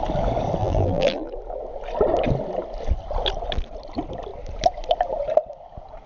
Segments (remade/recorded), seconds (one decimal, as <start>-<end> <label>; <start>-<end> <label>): 0.0-0.6 recorded; 0.6-1.3 remade; 1.3-6.1 recorded